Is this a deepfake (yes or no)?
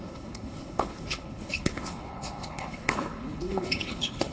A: yes